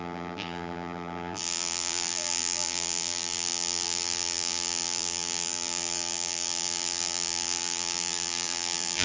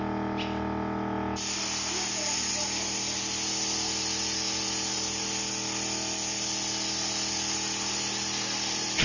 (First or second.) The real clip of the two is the second